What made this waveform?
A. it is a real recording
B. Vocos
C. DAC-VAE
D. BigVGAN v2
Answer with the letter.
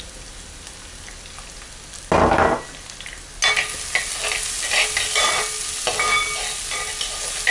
A